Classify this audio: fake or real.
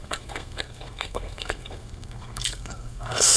fake